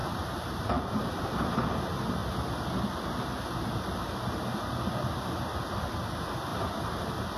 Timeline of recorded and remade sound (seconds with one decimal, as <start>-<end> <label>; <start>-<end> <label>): 0.0-1.2 remade; 1.2-6.5 recorded; 6.5-7.0 remade; 7.0-7.4 recorded